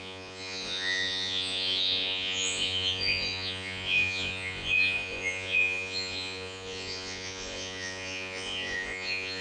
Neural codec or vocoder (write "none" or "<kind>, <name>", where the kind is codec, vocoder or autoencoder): vocoder, Vocos